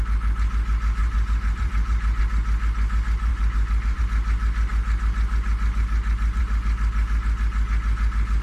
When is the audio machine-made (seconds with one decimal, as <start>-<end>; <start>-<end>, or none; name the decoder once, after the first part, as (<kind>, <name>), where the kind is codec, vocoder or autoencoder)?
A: 1.0-2.2 (vocoder, BigVGAN v2); 3.3-4.0